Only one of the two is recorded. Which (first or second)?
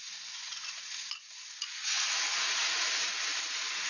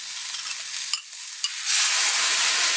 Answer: second